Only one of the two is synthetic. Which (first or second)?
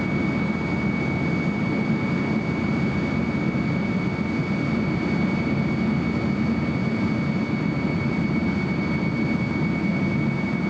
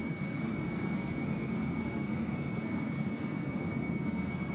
second